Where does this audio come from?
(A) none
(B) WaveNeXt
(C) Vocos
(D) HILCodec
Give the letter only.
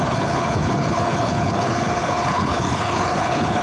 D